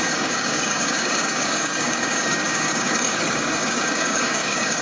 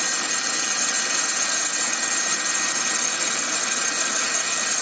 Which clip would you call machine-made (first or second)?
first